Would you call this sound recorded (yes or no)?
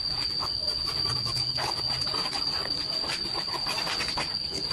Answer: yes